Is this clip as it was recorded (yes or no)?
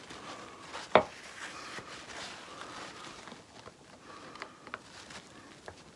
yes